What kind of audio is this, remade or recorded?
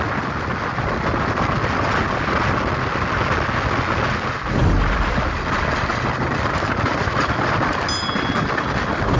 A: recorded